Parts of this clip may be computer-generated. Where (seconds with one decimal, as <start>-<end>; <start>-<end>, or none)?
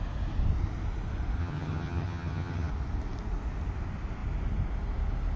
1.4-2.7